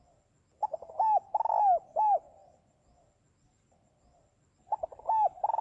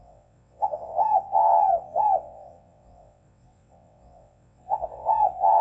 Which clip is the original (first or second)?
first